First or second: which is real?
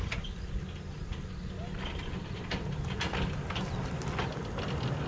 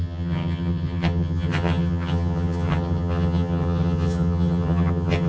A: first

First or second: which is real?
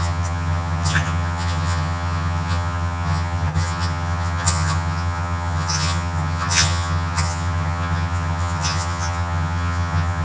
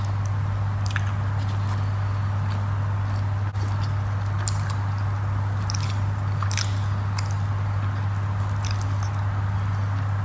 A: second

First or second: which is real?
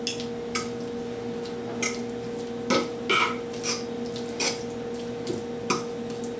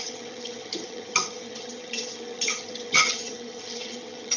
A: first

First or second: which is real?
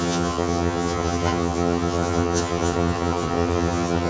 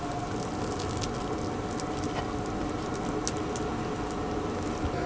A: second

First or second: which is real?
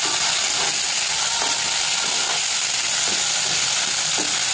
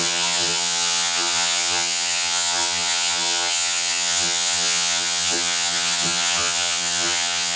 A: first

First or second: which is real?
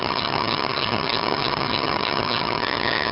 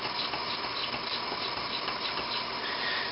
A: second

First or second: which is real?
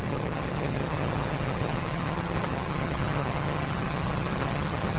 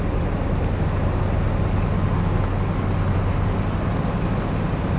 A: second